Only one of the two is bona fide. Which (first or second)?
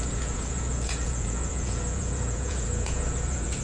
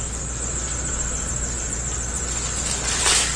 second